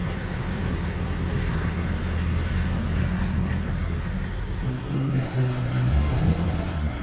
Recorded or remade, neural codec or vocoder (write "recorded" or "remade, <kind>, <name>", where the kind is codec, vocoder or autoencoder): remade, codec, SNAC